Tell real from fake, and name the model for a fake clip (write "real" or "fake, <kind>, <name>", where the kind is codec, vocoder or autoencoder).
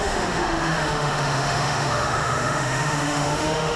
fake, autoencoder, DAC-VAE